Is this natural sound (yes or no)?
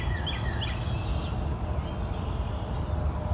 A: yes